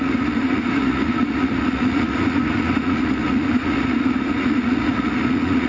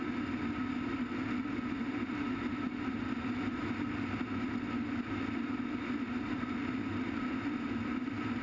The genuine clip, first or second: second